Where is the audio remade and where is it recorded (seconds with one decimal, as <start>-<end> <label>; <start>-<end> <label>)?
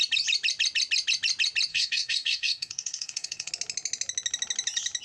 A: 0.0-1.7 recorded; 1.7-3.5 remade; 3.5-5.0 recorded